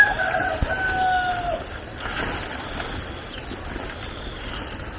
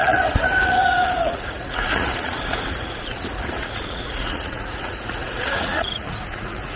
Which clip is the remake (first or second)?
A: second